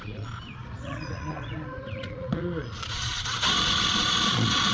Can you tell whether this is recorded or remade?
remade